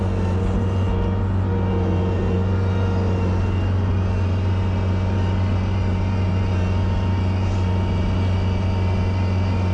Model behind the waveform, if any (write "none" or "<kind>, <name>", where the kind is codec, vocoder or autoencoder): none